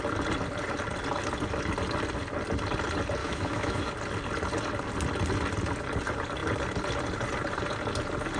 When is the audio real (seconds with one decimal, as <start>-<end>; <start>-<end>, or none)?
0.0-3.2; 3.9-8.4

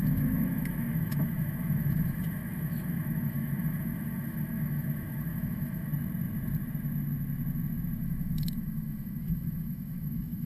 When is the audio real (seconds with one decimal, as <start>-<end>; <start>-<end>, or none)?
5.9-8.0

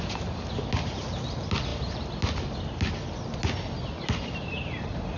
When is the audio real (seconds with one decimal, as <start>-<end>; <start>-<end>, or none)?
0.0-5.2

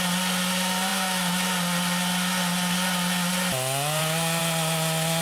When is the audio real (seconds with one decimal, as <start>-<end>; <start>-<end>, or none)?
0.0-5.2

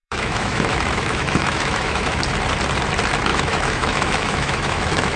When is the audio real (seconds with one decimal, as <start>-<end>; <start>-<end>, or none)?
2.2-3.3